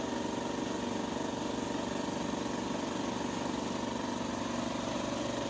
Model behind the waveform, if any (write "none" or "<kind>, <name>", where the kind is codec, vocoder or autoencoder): none